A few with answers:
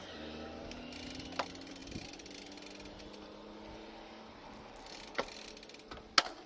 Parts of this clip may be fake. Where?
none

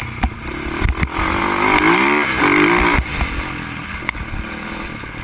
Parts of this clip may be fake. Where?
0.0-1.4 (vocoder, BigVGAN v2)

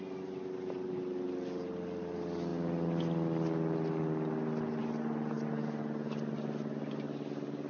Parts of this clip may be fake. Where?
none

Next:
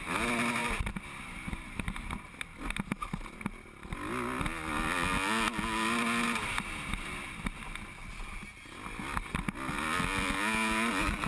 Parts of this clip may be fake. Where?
none